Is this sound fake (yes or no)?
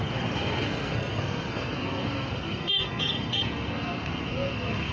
yes